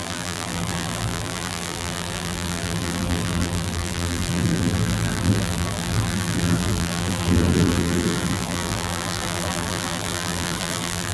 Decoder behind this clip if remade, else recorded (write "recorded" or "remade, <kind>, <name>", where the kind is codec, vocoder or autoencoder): remade, vocoder, BigVGAN v2